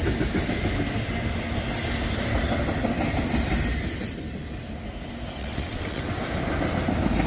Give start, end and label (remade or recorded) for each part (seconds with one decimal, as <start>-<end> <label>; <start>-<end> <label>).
0.0-5.4 recorded; 5.4-6.0 remade; 6.0-7.3 recorded